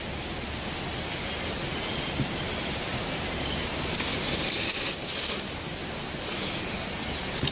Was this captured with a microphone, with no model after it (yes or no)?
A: yes